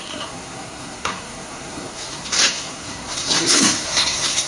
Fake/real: fake